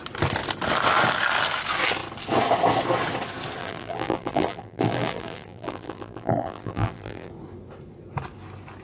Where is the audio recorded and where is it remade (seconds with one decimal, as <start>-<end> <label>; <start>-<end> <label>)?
0.0-3.6 recorded; 3.6-7.3 remade; 7.3-8.8 recorded